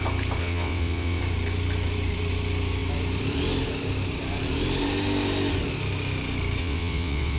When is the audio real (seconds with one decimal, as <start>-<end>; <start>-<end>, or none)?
0.0-0.4; 1.2-6.6

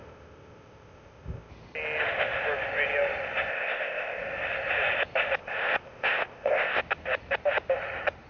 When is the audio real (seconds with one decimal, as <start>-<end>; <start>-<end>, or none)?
1.5-3.5; 4.2-5.4; 6.8-8.3

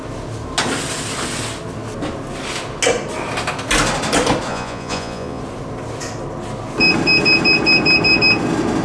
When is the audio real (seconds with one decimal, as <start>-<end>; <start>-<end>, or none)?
0.0-4.5; 5.4-8.8

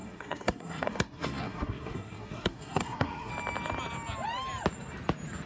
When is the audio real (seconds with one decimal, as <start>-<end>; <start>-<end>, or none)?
3.3-5.5

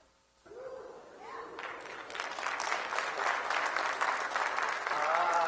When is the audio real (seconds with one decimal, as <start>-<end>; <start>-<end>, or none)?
0.0-5.5